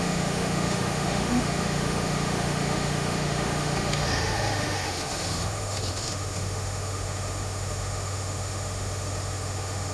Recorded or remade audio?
remade